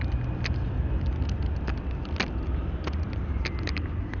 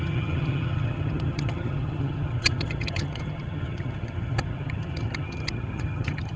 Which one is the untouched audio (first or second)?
first